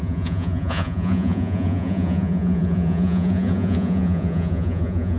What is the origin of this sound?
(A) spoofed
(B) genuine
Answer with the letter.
A